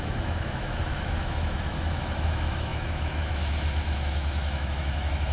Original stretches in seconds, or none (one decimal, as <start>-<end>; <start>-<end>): none